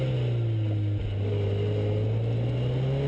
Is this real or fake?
real